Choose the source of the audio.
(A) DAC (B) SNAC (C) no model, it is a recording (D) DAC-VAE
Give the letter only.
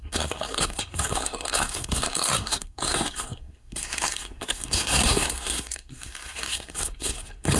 B